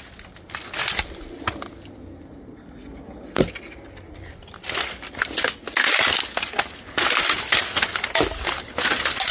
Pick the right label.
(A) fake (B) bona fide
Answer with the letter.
B